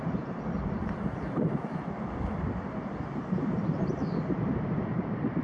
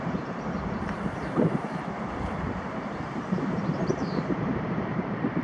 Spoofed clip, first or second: second